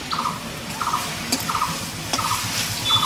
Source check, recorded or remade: recorded